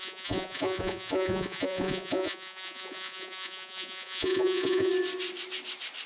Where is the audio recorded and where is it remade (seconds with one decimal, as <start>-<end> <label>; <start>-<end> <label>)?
0.0-4.9 remade; 4.9-6.1 recorded